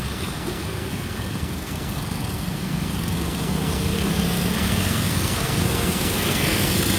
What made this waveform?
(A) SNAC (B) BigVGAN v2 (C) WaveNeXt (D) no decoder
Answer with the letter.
A